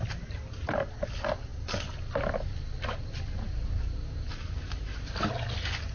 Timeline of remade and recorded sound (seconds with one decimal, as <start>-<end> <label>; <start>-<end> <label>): 0.0-5.9 recorded